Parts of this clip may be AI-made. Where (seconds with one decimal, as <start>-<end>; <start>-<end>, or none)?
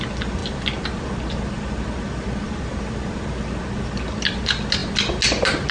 none